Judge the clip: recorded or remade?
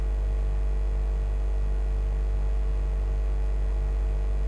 recorded